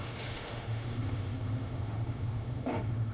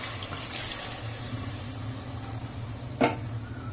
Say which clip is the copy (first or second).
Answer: first